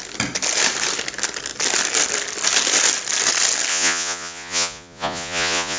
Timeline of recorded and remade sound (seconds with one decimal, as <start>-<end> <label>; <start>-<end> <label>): 0.0-3.7 recorded; 3.7-5.8 remade